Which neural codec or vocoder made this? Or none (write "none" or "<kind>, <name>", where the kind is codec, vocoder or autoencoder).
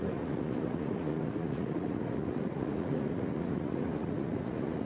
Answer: vocoder, Vocos